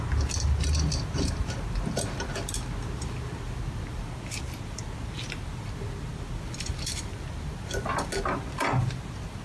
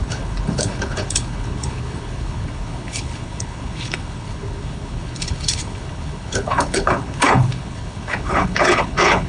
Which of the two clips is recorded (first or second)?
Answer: first